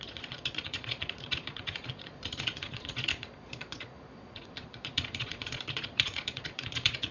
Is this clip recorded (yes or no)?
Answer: no